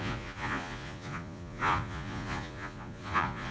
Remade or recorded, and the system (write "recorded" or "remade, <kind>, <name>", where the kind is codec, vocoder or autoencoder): remade, vocoder, Vocos